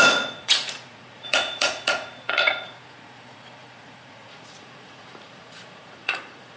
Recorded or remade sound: remade